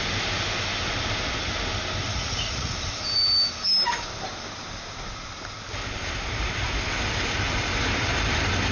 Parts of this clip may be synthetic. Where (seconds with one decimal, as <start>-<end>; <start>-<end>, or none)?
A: 2.1-2.7